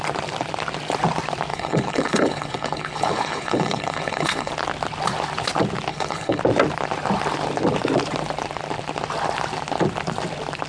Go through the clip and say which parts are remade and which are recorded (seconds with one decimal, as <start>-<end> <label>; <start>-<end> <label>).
0.0-1.5 recorded; 1.5-4.5 remade; 4.5-5.9 recorded; 5.9-6.4 remade; 6.4-10.7 recorded